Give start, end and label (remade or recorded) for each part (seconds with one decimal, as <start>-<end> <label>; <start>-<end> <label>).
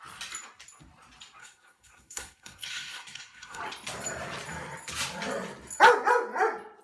0.0-1.4 recorded; 1.4-3.6 remade; 3.6-6.8 recorded